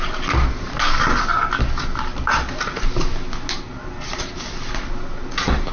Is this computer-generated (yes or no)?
no